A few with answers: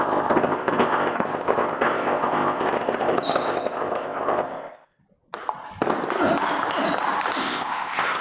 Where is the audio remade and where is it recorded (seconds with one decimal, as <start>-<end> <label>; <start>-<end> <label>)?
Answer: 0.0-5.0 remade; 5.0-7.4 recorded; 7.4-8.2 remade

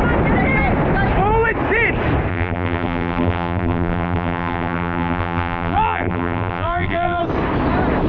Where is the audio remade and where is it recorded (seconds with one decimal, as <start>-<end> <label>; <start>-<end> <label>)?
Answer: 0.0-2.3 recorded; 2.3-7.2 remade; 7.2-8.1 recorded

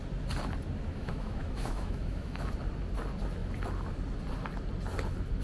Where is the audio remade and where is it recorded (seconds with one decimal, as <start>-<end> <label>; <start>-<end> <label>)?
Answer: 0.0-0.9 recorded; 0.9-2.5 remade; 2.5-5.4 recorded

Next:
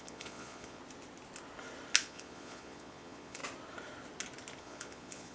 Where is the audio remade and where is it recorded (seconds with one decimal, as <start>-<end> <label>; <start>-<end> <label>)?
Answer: 0.0-0.8 remade; 0.8-2.0 recorded; 2.0-3.4 remade; 3.4-4.6 recorded; 4.6-5.3 remade

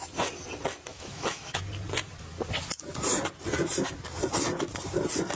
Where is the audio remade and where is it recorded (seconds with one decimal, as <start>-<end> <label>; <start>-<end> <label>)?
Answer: 0.0-0.9 recorded; 0.9-1.6 remade; 1.6-5.4 recorded